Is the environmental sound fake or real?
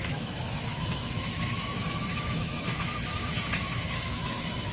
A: fake